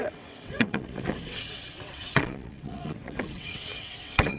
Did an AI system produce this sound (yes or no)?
yes